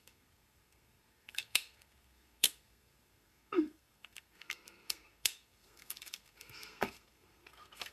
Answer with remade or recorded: remade